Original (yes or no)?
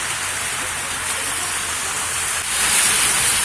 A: yes